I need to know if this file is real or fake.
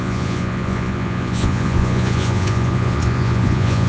fake